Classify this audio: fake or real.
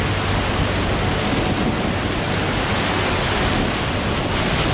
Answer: real